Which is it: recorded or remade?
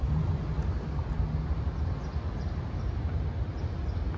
recorded